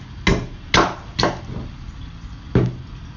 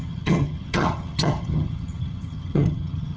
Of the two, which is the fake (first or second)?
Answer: second